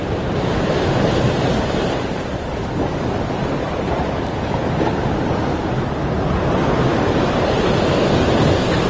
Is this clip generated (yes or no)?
no